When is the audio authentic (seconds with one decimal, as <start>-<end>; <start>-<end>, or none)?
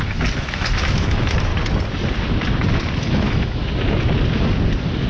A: 1.5-3.0; 3.6-5.1